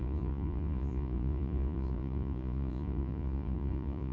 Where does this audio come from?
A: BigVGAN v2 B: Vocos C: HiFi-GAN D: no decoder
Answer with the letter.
B